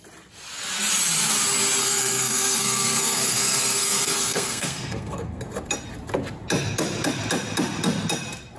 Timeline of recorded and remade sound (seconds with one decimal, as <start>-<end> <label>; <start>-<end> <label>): 0.0-1.8 recorded; 1.8-5.4 remade; 5.4-8.6 recorded